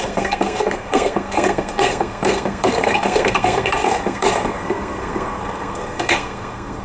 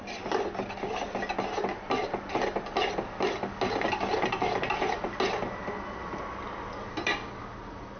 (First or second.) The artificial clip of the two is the first